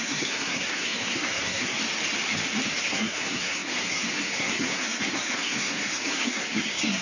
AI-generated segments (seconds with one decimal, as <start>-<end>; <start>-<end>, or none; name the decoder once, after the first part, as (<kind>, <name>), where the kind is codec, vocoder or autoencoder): 0.0-1.8 (codec, SNAC); 2.8-7.0